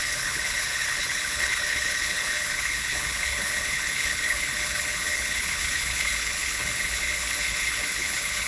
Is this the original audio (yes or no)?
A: no